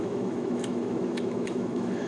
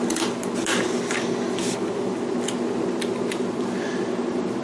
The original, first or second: second